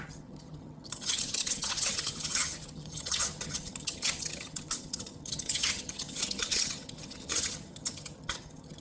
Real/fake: fake